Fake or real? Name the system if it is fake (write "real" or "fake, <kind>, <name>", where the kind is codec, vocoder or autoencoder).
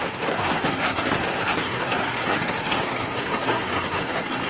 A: fake, codec, SNAC